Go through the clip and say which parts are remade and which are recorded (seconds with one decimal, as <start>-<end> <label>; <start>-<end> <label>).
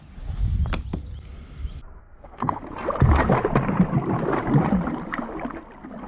0.0-2.0 recorded; 2.0-2.6 remade; 2.6-6.1 recorded